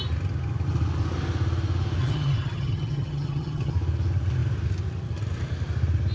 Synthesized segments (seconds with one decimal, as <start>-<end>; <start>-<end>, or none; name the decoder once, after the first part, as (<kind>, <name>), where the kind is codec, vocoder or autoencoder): 2.0-3.7 (vocoder, HiFi-GAN)